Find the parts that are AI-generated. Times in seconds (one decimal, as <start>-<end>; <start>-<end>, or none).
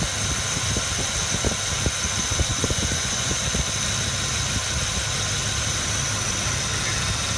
2.5-3.4